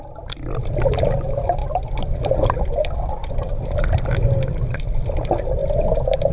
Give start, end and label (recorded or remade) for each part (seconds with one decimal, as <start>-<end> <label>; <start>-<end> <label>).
0.0-6.3 recorded